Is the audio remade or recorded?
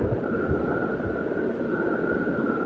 recorded